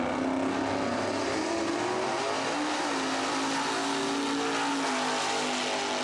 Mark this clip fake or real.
real